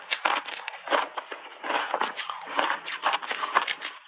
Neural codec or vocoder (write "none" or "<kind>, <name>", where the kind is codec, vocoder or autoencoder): none